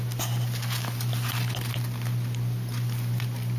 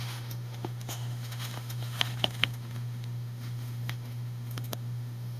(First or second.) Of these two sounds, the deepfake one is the second